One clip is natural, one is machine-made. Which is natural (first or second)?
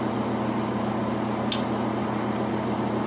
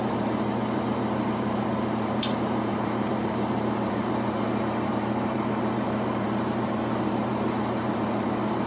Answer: first